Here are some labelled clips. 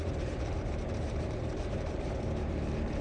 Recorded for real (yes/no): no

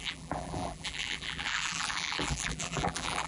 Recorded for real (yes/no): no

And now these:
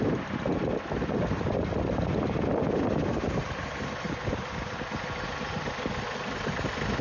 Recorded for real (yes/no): yes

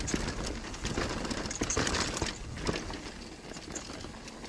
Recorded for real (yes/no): yes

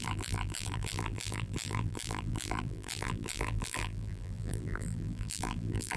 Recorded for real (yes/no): no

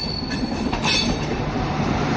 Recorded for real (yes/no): no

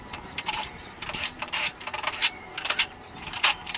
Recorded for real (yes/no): no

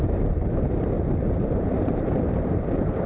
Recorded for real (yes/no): no